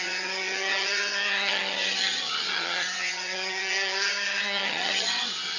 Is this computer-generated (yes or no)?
yes